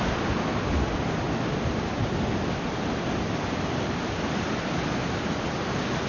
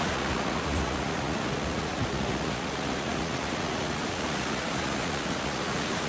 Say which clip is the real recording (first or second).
first